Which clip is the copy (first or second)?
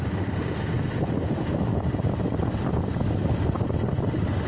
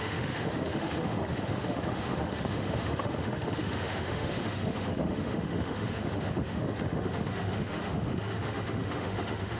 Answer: second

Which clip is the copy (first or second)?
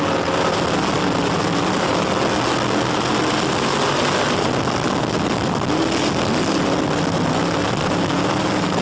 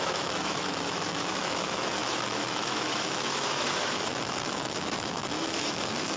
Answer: second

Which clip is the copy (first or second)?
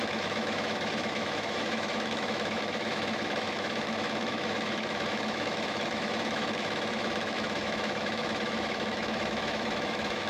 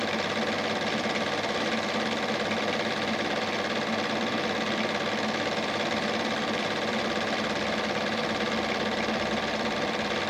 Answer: first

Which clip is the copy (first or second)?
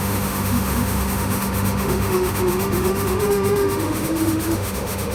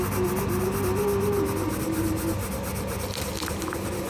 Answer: first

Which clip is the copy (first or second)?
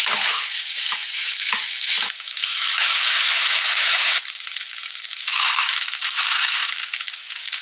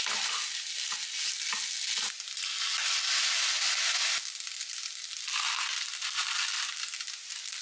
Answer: first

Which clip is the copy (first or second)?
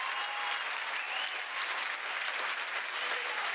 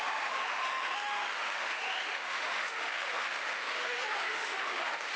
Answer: second